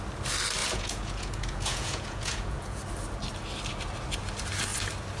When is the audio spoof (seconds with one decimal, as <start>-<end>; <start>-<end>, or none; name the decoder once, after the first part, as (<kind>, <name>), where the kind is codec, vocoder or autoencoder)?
0.6-2.8 (vocoder, Vocos)